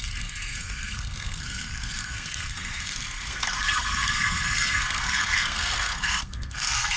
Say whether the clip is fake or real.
fake